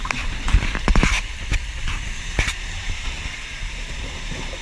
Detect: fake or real fake